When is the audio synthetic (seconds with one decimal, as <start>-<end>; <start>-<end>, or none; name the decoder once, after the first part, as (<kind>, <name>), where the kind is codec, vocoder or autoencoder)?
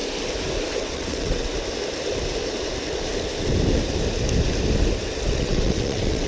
0.8-1.5 (vocoder, WaveNeXt); 5.3-6.3